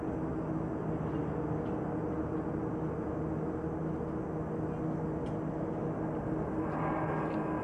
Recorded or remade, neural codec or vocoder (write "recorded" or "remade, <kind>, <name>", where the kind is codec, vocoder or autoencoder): recorded